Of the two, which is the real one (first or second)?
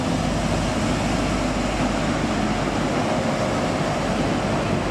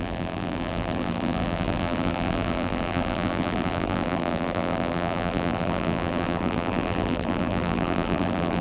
first